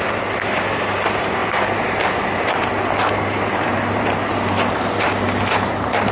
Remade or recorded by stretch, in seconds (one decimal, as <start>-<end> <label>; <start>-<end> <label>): 0.0-6.1 remade